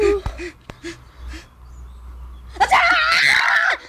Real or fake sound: real